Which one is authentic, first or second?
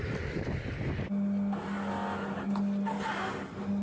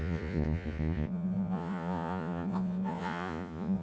first